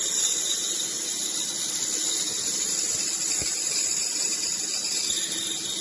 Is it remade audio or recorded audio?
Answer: recorded